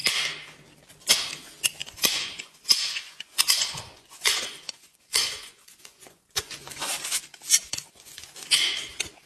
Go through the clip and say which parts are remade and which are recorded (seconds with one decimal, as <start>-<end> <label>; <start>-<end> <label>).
0.0-1.8 recorded; 1.8-6.9 remade; 6.9-7.5 recorded; 7.5-8.6 remade; 8.6-9.3 recorded